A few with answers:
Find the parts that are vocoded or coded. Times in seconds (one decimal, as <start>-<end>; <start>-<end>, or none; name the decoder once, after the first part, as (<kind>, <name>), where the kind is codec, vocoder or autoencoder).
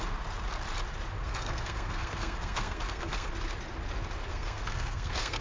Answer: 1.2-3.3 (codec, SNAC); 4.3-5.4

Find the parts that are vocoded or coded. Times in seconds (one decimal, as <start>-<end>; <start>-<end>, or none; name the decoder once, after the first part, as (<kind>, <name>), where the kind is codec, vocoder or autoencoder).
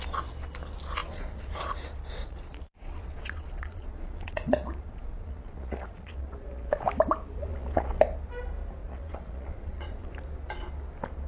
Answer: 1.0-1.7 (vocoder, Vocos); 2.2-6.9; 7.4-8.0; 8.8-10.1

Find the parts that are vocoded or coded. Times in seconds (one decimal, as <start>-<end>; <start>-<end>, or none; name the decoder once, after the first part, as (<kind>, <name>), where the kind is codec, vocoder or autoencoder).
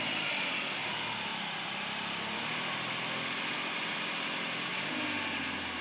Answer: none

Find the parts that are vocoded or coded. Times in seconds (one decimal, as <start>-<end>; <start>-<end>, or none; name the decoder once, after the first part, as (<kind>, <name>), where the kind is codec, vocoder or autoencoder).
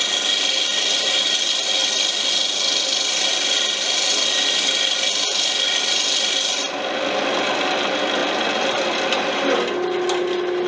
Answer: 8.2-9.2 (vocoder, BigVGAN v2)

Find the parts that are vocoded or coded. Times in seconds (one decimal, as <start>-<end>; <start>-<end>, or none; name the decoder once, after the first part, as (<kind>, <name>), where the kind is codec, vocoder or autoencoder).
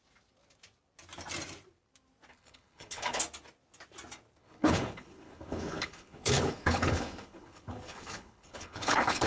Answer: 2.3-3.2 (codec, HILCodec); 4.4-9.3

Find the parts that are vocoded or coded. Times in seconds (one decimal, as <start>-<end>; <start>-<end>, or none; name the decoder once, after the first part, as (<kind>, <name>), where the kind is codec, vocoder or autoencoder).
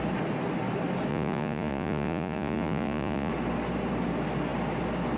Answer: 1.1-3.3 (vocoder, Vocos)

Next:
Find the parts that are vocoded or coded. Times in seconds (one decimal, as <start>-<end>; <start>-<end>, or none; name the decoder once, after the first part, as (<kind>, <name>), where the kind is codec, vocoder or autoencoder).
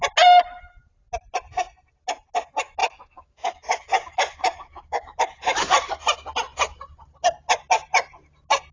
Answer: 2.8-5.7 (autoencoder, DAC-VAE)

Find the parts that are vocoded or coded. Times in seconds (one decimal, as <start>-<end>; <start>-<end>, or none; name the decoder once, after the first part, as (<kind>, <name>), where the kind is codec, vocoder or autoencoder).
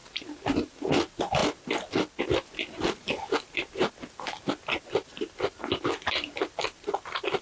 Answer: none